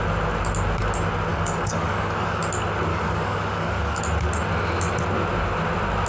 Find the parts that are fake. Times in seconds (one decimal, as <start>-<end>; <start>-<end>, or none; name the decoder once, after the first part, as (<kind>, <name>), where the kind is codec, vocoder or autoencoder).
1.3-2.4 (codec, DAC); 2.9-4.0